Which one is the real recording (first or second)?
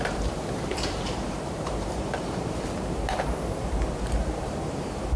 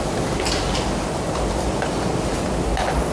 second